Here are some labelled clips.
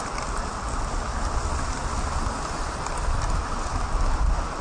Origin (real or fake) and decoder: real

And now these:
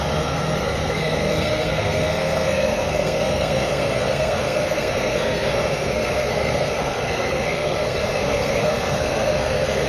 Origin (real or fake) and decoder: fake, codec, SNAC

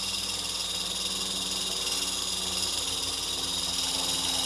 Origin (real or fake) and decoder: real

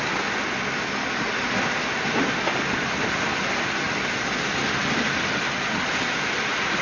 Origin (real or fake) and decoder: real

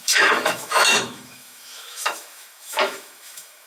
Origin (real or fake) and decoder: fake, autoencoder, DAC-VAE